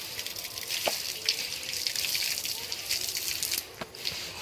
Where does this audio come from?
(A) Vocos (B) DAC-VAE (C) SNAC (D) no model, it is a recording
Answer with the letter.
D